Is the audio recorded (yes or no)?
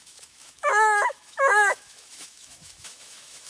no